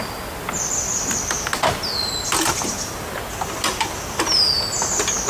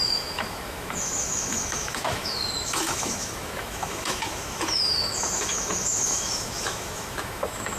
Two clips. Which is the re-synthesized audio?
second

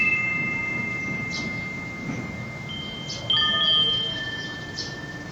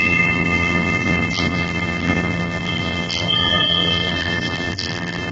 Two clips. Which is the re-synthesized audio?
second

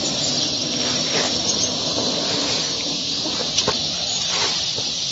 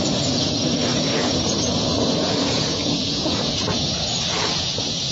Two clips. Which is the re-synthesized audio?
second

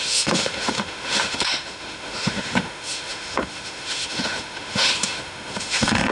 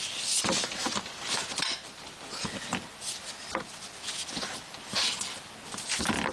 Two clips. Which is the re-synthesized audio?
first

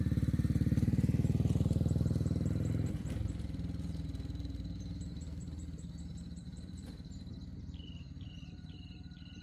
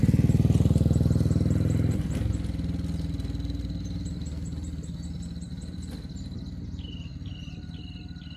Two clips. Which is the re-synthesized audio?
first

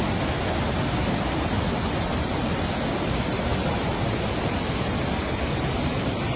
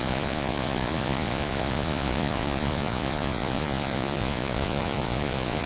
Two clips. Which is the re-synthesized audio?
second